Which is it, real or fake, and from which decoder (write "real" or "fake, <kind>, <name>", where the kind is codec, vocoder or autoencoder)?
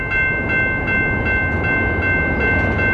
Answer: real